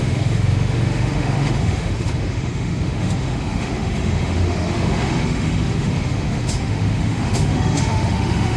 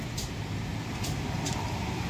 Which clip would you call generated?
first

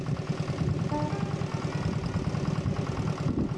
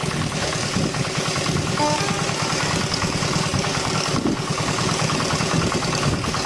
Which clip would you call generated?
second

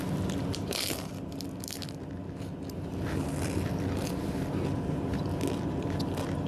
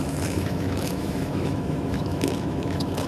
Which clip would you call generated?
second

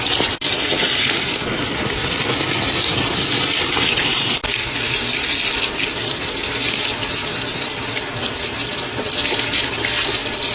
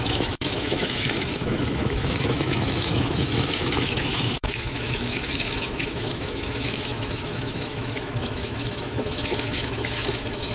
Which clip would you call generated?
second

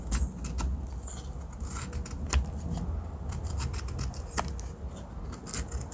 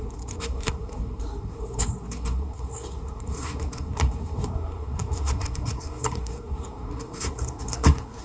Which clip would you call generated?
second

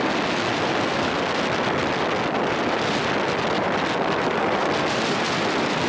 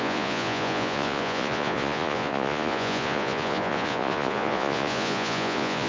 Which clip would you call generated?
second